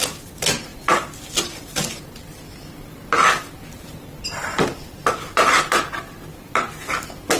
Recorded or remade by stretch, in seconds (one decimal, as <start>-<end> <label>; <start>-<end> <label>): 0.0-4.4 recorded; 4.4-7.4 remade